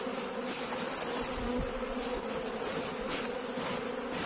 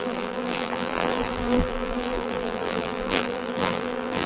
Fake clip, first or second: second